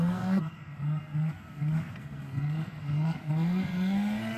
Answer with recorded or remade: remade